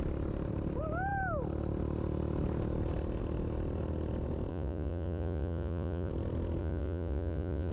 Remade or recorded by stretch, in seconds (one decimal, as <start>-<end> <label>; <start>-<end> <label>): 0.0-4.5 recorded; 4.5-6.1 remade; 6.1-6.6 recorded; 6.6-7.7 remade